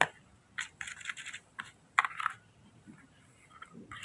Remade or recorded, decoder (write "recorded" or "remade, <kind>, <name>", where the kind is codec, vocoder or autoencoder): recorded